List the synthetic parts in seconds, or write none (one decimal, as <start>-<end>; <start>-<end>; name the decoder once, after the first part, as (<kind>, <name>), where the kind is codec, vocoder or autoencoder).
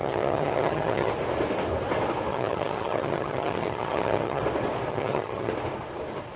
0.0-1.1 (vocoder, HiFi-GAN); 2.3-4.4; 4.9-5.5